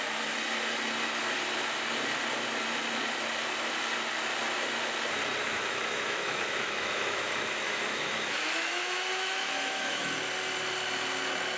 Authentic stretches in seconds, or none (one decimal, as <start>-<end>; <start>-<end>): 0.0-5.4; 10.1-11.6